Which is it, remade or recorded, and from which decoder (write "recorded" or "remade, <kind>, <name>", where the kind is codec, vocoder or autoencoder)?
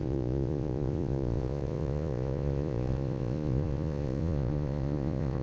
remade, vocoder, Vocos